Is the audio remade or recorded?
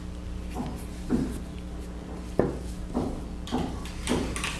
recorded